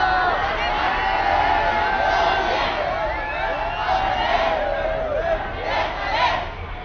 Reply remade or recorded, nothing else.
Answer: recorded